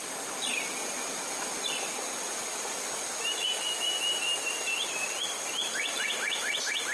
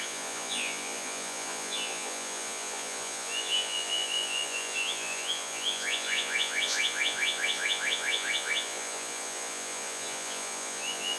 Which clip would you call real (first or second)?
first